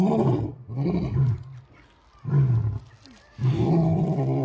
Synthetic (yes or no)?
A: no